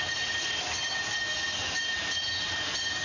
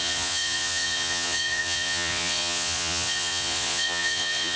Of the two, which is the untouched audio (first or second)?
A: first